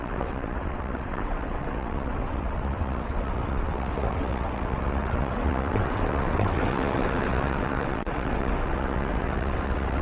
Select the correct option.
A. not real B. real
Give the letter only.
A